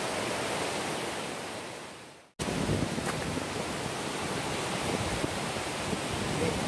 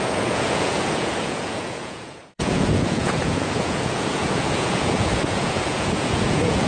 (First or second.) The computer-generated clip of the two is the second